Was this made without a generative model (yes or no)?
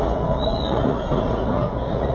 no